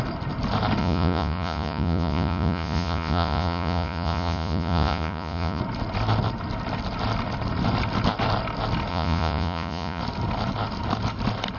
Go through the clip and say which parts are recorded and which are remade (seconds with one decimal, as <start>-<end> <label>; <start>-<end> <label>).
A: 0.0-0.8 recorded; 0.8-5.6 remade; 5.6-8.9 recorded; 8.9-10.0 remade; 10.0-11.6 recorded